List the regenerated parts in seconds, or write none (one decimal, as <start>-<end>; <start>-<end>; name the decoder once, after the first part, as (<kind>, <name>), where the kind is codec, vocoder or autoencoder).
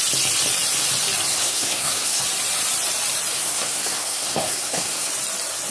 1.3-2.2 (codec, SNAC); 3.3-5.1